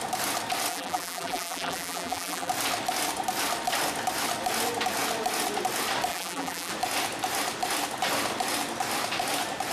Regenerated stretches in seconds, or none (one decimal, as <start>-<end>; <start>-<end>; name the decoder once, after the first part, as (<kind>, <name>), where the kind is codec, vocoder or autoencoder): 0.7-2.5 (vocoder, BigVGAN v2); 6.1-6.7